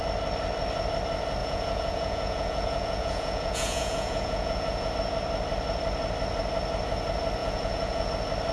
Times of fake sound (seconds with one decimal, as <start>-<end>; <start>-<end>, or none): 1.4-4.9; 7.4-8.1